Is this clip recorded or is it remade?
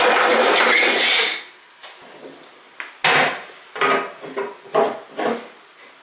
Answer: recorded